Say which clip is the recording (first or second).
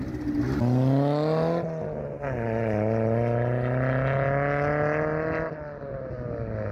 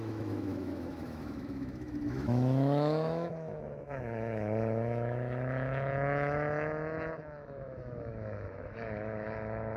first